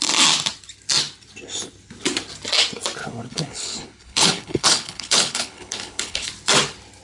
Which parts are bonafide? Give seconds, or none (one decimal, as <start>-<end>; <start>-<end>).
0.0-3.0; 6.3-7.0